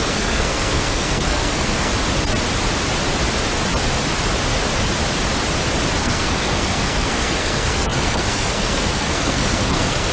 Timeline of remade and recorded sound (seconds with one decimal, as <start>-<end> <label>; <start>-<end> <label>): 0.0-1.9 remade; 1.9-6.0 recorded; 6.0-10.1 remade